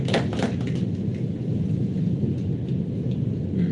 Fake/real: real